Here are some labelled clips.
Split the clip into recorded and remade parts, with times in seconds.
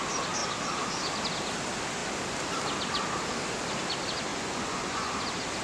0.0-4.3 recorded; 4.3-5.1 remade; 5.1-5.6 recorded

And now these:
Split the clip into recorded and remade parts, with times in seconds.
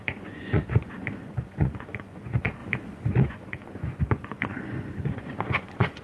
0.0-6.0 remade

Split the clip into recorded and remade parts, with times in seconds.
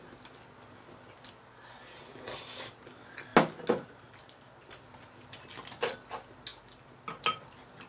0.0-7.9 recorded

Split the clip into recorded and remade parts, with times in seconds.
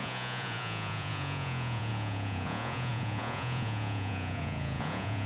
0.0-5.3 remade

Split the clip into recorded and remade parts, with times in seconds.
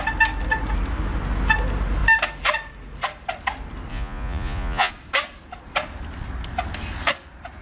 0.0-3.9 recorded; 3.9-4.9 remade; 4.9-7.6 recorded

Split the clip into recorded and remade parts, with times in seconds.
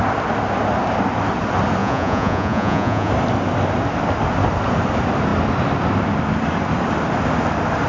0.0-1.8 recorded; 1.8-3.1 remade; 3.1-7.9 recorded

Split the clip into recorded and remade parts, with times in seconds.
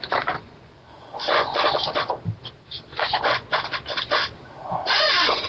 0.0-0.4 recorded; 0.4-1.6 remade; 1.6-2.9 recorded; 2.9-3.6 remade; 3.6-4.6 recorded; 4.6-5.5 remade